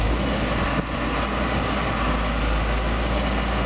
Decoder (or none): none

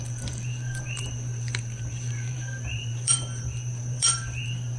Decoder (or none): vocoder, BigVGAN v2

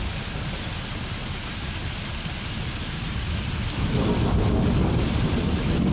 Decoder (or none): none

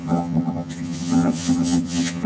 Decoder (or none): vocoder, HiFi-GAN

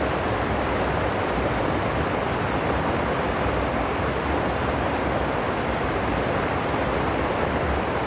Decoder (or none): none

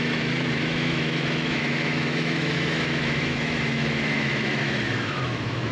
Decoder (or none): autoencoder, DAC-VAE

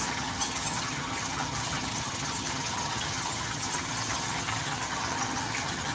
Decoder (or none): vocoder, HiFi-GAN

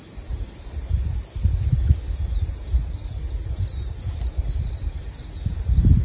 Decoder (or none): none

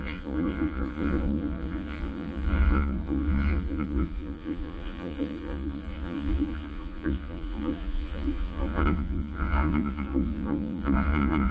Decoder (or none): vocoder, Vocos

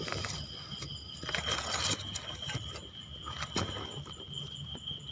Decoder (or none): none